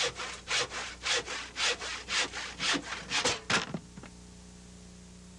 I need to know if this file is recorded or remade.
recorded